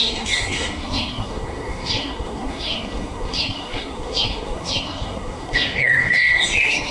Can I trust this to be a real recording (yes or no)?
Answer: no